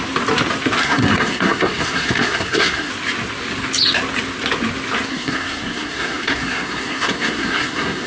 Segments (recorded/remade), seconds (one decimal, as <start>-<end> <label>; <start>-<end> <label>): 0.0-0.8 recorded; 0.8-2.9 remade; 2.9-5.1 recorded; 5.1-8.1 remade